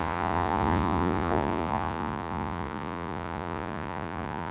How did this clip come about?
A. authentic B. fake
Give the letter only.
B